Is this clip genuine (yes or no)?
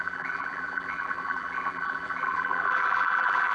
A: no